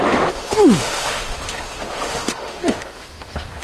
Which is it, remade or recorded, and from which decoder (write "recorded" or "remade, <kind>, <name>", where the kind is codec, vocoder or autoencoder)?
remade, autoencoder, DAC-VAE